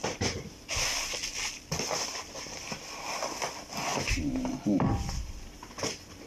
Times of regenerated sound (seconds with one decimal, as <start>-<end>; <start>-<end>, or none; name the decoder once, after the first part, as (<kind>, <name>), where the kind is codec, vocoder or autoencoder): none